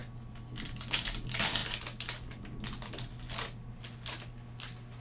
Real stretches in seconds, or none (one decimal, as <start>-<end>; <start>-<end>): 0.0-5.0